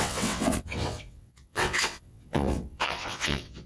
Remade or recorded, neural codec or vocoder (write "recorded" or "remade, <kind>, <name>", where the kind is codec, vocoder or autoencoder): remade, vocoder, WaveNeXt